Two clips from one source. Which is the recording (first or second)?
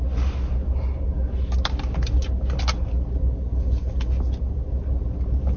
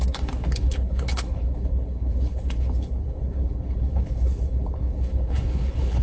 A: first